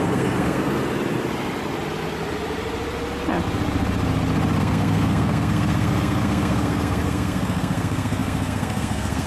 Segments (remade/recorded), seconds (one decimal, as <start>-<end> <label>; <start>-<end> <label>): 0.0-0.8 remade; 0.8-4.6 recorded; 4.6-9.3 remade